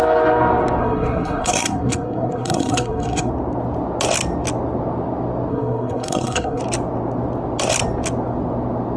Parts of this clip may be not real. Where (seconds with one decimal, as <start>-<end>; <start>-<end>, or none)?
0.8-3.3; 5.5-6.6